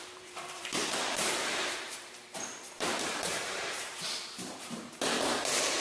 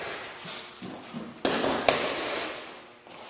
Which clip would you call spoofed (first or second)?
first